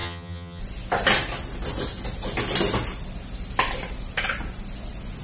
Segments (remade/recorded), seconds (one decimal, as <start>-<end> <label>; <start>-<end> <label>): 0.0-0.6 remade; 0.6-5.2 recorded